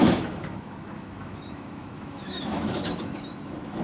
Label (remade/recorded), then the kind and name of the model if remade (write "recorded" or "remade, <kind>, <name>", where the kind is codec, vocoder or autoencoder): remade, autoencoder, DAC-VAE